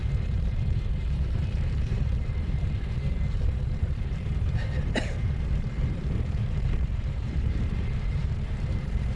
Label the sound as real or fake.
fake